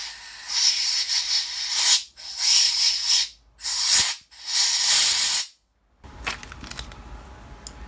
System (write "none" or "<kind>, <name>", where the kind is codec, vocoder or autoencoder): none